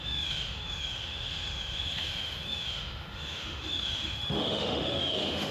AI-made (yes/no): yes